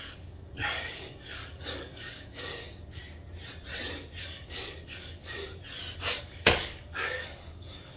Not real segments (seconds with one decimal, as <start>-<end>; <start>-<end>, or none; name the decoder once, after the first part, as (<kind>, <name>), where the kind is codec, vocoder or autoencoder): 0.0-3.0 (codec, DAC); 4.2-5.4; 6.2-8.0